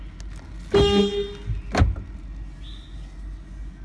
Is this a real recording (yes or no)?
yes